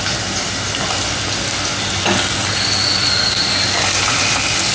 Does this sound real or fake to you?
real